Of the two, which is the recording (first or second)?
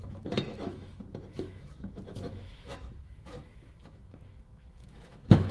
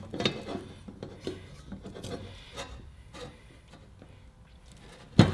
second